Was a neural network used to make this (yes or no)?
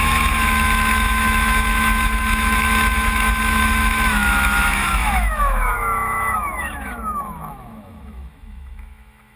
yes